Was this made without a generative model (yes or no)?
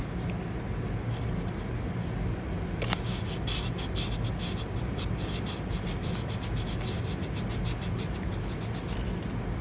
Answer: yes